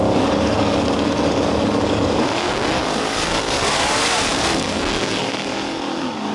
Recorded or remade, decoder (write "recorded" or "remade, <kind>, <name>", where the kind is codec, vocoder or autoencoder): remade, codec, DAC